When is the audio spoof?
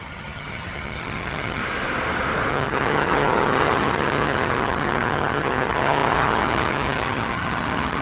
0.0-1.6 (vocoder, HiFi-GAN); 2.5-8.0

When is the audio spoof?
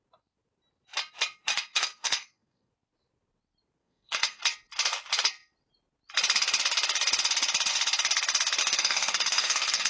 1.5-2.7 (codec, SNAC); 3.8-4.4; 8.6-9.9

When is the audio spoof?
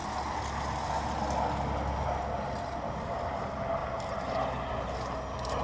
none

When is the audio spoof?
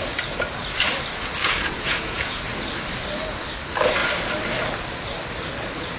1.4-2.4 (vocoder, Vocos)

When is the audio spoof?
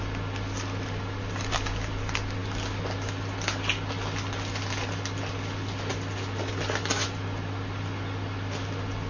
none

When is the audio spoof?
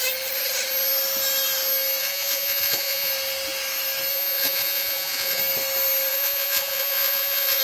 2.0-3.1 (vocoder, Vocos); 4.1-5.4; 6.1-7.6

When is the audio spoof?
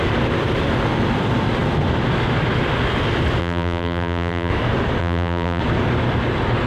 3.4-4.5 (vocoder, BigVGAN v2); 5.0-5.6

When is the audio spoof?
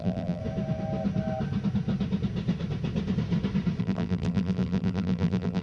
0.0-0.4 (vocoder, BigVGAN v2); 3.8-5.6